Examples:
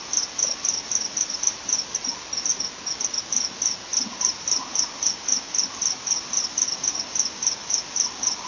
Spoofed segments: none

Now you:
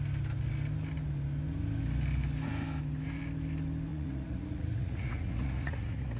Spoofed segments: 3.9-6.2 (vocoder, Vocos)

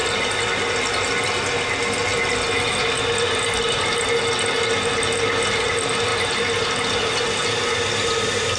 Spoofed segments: none

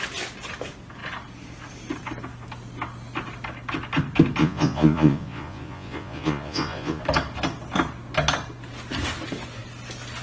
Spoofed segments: 4.4-7.0 (vocoder, Vocos)